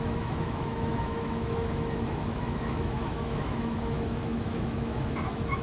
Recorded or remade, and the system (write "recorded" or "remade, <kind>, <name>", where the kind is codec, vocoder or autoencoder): remade, autoencoder, DAC-VAE